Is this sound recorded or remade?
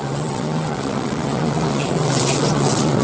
remade